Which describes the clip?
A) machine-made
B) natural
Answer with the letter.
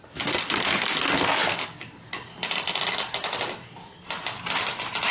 B